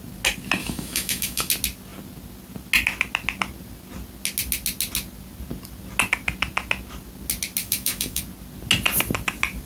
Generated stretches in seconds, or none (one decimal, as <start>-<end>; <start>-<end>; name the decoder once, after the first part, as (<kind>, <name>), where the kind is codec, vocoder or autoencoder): 0.6-1.5 (autoencoder, DAC-VAE); 7.6-8.2